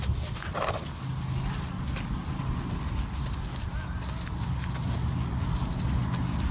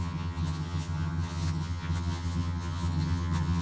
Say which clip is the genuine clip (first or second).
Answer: first